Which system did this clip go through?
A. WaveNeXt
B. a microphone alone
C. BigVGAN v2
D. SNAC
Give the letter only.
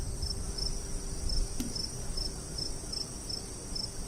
B